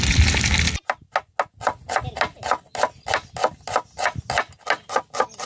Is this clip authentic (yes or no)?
yes